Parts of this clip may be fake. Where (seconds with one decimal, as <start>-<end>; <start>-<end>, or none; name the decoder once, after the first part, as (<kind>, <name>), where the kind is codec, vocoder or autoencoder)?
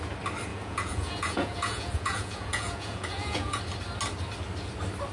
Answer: 0.5-3.6 (vocoder, Vocos)